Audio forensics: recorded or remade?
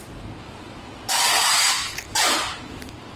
recorded